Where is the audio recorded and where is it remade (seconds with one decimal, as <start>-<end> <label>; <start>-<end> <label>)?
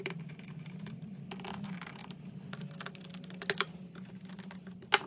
0.0-5.1 recorded